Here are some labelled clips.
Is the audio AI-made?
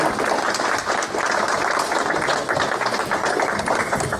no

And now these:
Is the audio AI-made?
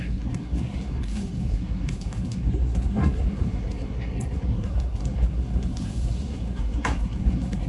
yes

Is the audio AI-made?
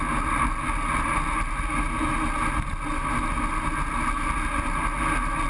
no